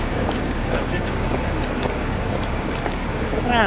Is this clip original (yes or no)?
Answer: no